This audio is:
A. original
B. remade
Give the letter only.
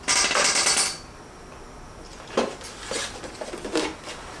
B